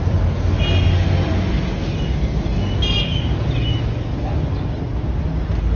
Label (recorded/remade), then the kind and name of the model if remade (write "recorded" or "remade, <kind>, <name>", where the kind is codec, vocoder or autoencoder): recorded